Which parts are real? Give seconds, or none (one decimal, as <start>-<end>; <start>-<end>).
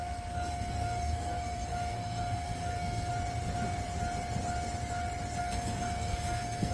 3.1-5.4